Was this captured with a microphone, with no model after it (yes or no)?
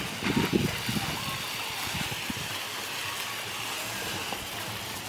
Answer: yes